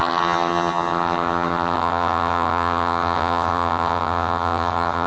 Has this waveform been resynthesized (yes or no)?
yes